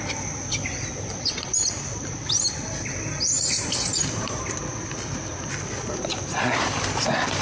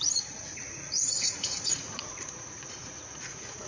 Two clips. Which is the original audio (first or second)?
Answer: first